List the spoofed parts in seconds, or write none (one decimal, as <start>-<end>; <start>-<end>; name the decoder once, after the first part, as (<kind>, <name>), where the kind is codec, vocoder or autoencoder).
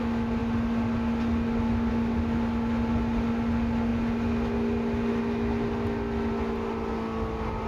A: none